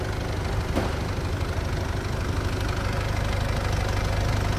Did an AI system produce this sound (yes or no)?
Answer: no